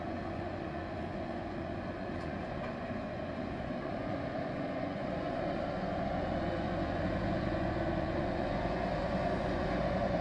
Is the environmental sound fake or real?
fake